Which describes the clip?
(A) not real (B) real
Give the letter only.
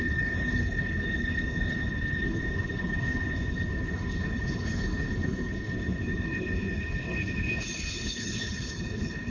A